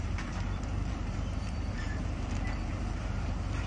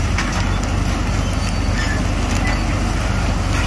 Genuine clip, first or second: second